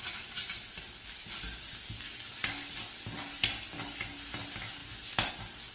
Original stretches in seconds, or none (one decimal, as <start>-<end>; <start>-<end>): 0.0-5.7